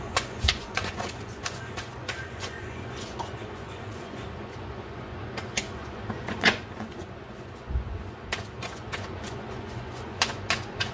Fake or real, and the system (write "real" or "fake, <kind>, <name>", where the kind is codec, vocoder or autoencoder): fake, vocoder, Vocos